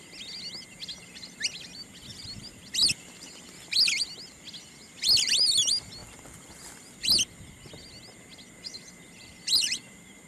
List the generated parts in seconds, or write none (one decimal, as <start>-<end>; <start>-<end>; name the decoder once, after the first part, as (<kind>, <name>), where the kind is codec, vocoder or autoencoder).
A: none